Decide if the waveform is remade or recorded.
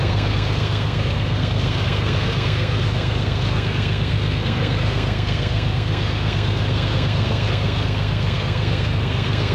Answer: remade